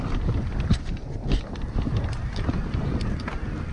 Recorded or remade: recorded